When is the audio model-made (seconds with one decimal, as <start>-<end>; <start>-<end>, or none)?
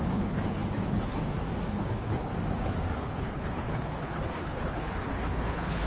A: 0.0-1.2; 1.7-2.3; 2.9-5.9